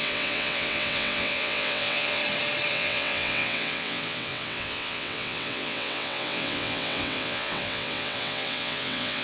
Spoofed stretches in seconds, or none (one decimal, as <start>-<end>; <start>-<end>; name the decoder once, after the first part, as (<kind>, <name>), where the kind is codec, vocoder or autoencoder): 0.0-2.2 (vocoder, WaveNeXt); 2.7-9.2